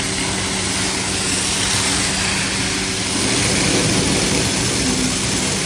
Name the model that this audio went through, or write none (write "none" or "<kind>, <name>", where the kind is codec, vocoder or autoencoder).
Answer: none